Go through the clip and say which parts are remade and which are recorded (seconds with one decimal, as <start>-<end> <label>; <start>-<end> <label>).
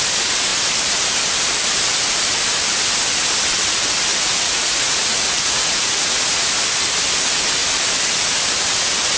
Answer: 0.0-4.1 recorded; 4.1-6.5 remade; 6.5-9.2 recorded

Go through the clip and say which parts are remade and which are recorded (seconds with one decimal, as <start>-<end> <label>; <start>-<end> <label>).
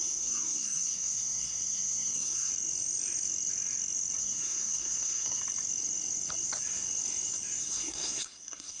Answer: 0.0-2.5 remade; 2.5-4.2 recorded; 4.2-5.4 remade; 5.4-7.6 recorded; 7.6-8.8 remade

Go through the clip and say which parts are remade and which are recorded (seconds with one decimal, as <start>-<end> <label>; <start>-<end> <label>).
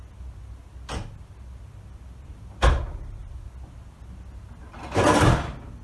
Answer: 0.0-5.8 recorded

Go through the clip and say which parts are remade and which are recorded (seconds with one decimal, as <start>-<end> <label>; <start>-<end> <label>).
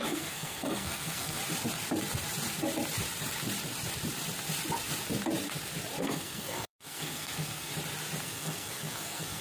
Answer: 0.0-1.4 remade; 1.4-6.0 recorded; 6.0-7.7 remade; 7.7-8.2 recorded; 8.2-9.4 remade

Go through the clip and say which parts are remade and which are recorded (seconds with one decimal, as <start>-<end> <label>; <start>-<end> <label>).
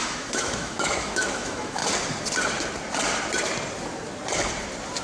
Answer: 0.0-1.8 remade; 1.8-5.0 recorded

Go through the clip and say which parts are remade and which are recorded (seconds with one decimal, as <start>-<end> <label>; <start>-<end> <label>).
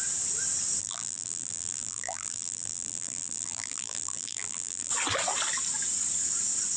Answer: 0.0-0.8 recorded; 0.8-4.9 remade; 4.9-6.8 recorded